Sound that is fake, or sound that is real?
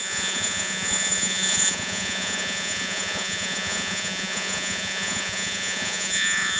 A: fake